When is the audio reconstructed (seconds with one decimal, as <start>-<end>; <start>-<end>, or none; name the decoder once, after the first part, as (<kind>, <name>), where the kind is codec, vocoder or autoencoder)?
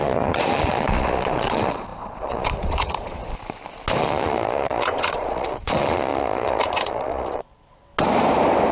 0.0-3.2 (vocoder, Vocos); 4.0-7.9